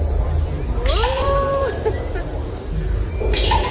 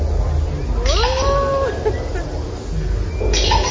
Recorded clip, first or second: second